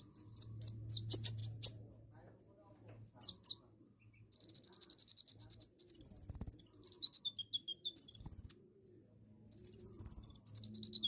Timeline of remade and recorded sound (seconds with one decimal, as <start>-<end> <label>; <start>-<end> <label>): 0.0-7.7 recorded; 7.7-8.5 remade; 8.5-11.1 recorded